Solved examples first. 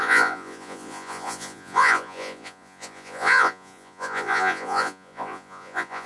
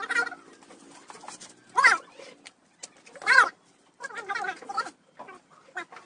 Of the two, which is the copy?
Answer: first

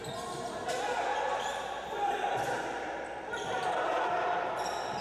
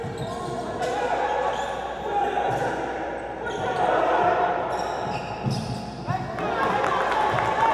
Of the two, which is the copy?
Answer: first